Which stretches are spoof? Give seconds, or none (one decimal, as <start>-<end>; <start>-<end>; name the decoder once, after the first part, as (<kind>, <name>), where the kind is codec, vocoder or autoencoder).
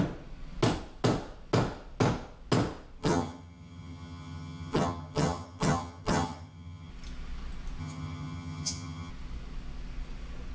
3.0-6.9 (vocoder, HiFi-GAN); 7.8-9.1